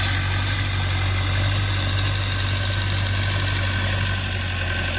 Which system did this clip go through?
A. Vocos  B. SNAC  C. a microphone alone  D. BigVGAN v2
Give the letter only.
C